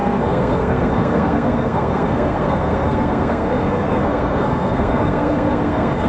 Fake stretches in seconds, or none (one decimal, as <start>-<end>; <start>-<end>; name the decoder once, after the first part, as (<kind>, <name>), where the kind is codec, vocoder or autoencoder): 0.0-6.1 (codec, SNAC)